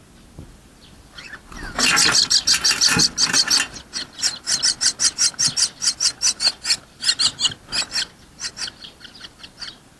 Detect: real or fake real